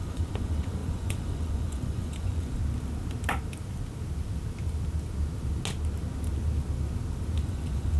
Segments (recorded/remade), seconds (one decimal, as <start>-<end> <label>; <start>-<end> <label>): 0.0-2.6 remade; 2.6-7.4 recorded; 7.4-8.0 remade